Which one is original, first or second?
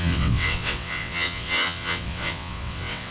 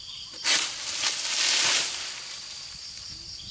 second